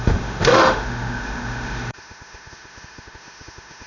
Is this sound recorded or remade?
remade